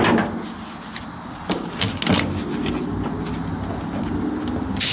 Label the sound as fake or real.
real